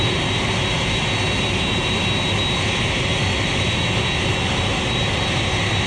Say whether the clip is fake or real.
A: real